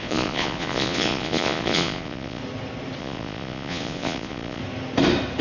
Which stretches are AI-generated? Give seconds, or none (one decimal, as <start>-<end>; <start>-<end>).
0.0-2.4; 3.0-4.6